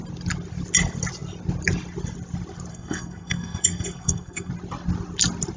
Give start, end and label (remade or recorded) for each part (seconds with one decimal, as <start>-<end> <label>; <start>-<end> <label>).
0.0-2.7 recorded; 2.7-4.5 remade; 4.5-5.6 recorded